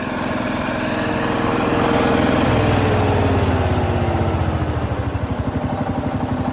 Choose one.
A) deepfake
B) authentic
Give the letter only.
B